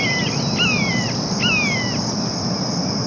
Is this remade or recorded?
recorded